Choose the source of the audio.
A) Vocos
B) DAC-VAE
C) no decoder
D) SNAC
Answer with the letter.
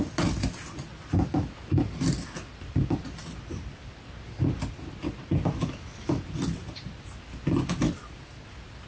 C